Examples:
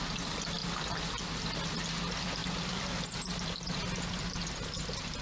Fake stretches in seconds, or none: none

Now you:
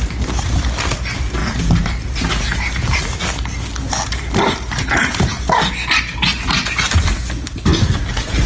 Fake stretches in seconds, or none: none

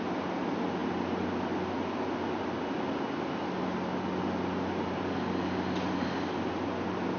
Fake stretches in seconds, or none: none

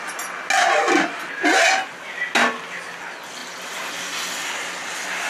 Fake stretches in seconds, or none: 3.4-3.9 (vocoder, BigVGAN v2)

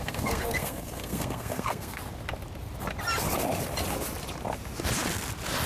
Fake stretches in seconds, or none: 0.0-2.0 (codec, SNAC)

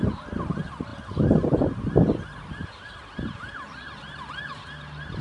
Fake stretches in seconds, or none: none

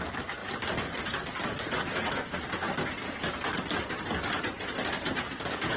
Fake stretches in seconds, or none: none

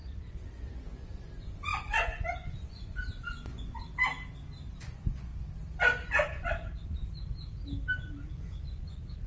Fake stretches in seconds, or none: 0.0-3.8 (vocoder, Vocos); 4.8-5.3; 8.3-9.3